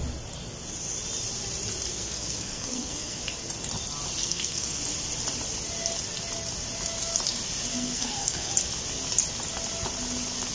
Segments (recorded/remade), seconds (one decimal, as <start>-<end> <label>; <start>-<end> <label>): 0.0-1.9 recorded; 1.9-3.2 remade; 3.2-4.2 recorded; 4.2-4.8 remade; 4.8-7.7 recorded; 7.7-8.5 remade; 8.5-10.5 recorded